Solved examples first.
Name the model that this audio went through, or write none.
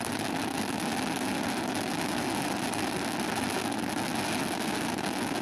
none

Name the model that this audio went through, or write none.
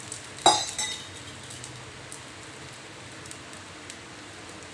none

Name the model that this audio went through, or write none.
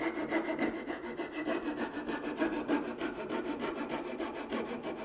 none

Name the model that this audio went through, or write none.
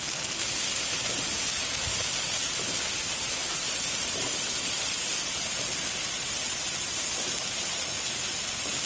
none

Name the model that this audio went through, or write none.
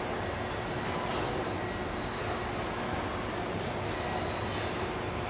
none